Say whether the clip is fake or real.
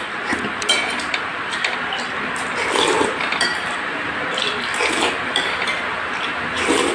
fake